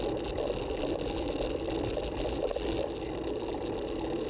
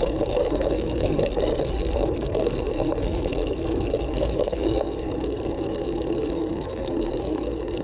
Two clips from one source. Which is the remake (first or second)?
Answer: second